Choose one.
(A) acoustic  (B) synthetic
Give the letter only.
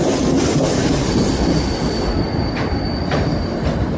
A